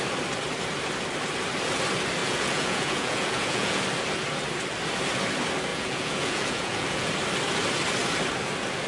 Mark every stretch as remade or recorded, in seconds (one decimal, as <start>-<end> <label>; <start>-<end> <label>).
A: 0.0-2.2 recorded; 2.2-3.8 remade; 3.8-5.7 recorded; 5.7-7.1 remade; 7.1-8.9 recorded